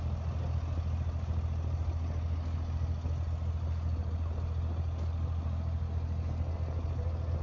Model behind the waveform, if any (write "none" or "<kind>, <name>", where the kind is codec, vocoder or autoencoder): none